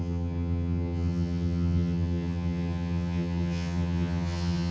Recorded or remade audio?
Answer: remade